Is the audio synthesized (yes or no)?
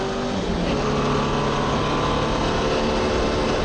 no